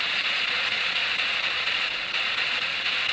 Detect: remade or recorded remade